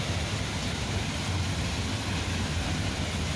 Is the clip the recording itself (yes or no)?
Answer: yes